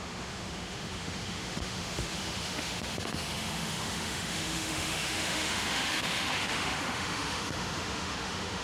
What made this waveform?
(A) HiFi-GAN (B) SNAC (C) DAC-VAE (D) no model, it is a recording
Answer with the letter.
C